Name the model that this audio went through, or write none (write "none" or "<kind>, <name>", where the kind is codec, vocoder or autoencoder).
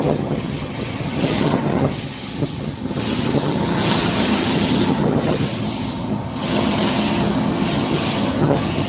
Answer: vocoder, HiFi-GAN